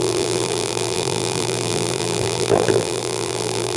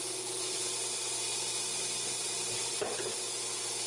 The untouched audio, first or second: second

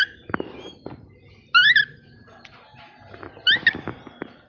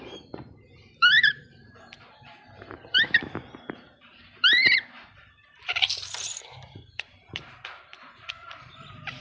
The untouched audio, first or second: first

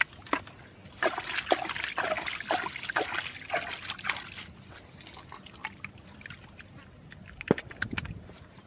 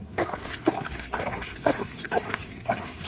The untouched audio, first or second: first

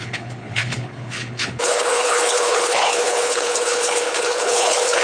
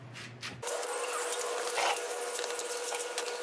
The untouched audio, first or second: second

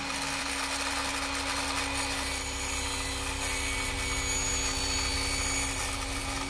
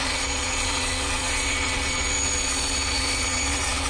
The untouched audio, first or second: first